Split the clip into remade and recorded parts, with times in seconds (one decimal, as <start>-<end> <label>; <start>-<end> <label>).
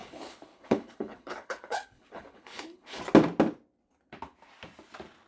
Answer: 0.0-3.0 remade; 3.0-5.3 recorded